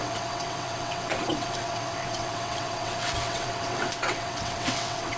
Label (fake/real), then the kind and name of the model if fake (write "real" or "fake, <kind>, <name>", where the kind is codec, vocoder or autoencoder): fake, vocoder, WaveNeXt